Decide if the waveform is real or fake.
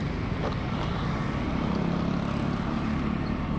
real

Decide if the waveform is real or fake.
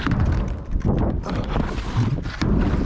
real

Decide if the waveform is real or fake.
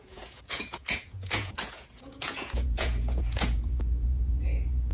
fake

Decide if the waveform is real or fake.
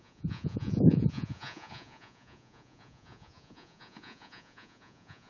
fake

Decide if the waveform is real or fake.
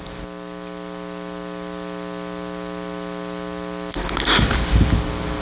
real